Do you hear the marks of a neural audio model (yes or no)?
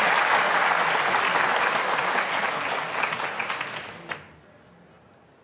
no